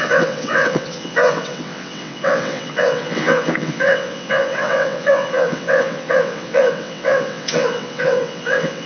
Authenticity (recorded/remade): remade